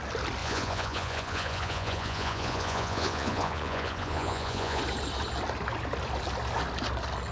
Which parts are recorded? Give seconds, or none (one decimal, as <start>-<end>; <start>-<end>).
0.0-0.4; 4.8-7.3